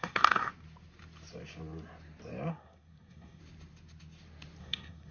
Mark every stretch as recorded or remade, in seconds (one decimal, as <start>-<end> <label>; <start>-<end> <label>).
0.0-0.5 remade; 0.5-2.5 recorded; 2.5-3.4 remade; 3.4-4.6 recorded; 4.6-5.1 remade